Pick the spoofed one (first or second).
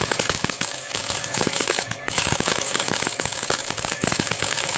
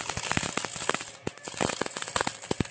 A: first